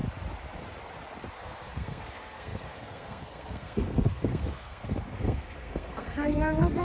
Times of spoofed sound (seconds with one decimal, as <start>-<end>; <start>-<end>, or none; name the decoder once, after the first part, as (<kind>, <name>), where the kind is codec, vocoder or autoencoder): 1.3-6.8 (codec, SNAC)